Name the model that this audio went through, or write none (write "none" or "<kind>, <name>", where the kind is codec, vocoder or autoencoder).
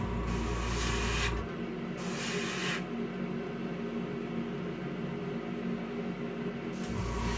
none